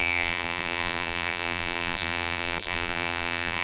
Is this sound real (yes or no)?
no